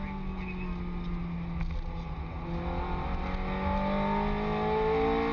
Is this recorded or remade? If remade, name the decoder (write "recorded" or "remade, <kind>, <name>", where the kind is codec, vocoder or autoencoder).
recorded